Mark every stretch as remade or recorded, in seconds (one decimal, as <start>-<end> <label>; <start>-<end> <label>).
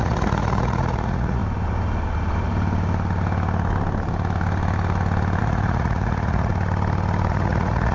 0.0-1.4 remade; 1.4-5.4 recorded; 5.4-6.5 remade; 6.5-7.3 recorded; 7.3-7.9 remade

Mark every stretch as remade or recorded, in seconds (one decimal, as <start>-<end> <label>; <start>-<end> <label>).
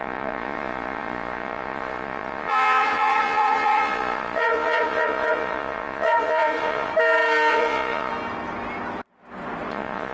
0.0-6.9 remade; 6.9-7.5 recorded; 7.5-8.1 remade; 8.1-9.7 recorded; 9.7-10.1 remade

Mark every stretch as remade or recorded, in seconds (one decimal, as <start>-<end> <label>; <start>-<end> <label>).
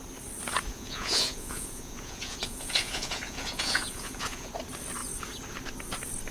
0.0-0.7 recorded; 0.7-4.5 remade; 4.5-6.3 recorded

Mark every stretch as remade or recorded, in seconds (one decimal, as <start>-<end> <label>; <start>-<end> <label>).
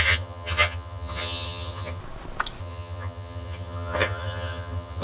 0.0-2.0 remade; 2.0-2.6 recorded; 2.6-5.0 remade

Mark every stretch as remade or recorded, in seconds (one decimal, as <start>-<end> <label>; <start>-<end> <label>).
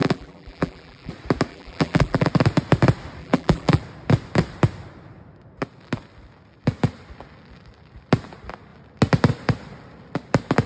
0.0-1.1 remade; 1.1-1.5 recorded; 1.5-2.3 remade; 2.3-3.2 recorded; 3.2-3.8 remade; 3.8-10.7 recorded